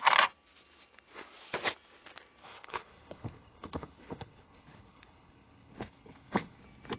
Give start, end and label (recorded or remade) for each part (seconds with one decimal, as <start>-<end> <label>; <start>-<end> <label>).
0.0-2.4 recorded; 2.4-6.6 remade; 6.6-7.0 recorded